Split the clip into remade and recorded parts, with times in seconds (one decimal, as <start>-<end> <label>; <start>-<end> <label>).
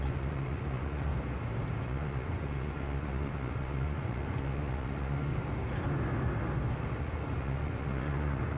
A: 0.0-1.1 remade; 1.1-1.8 recorded; 1.8-5.3 remade; 5.3-7.0 recorded; 7.0-8.6 remade